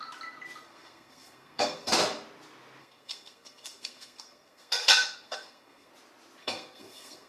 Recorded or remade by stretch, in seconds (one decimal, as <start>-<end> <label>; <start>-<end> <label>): 0.0-0.6 recorded; 0.6-1.9 remade; 1.9-2.8 recorded; 2.8-5.9 remade; 5.9-6.4 recorded; 6.4-7.3 remade